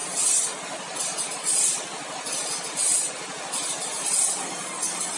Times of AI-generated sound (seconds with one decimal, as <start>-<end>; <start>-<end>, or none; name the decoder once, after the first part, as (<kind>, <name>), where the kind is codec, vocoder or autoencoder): none